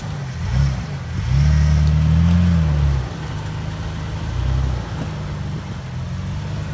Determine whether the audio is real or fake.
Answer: real